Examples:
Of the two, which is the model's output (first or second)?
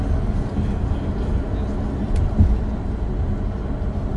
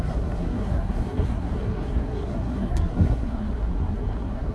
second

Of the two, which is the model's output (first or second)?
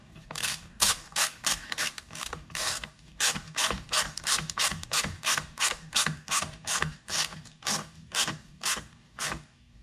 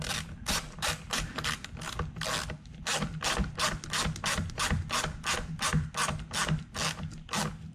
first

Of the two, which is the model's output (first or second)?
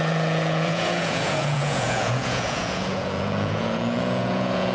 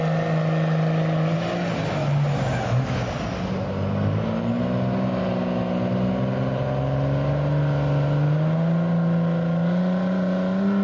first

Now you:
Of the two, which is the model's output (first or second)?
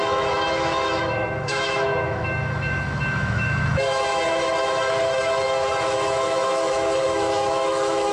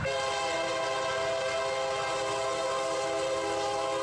first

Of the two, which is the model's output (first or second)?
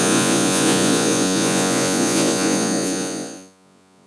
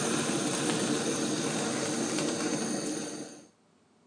first